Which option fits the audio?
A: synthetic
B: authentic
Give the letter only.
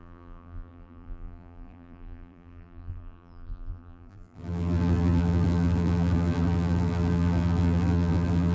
A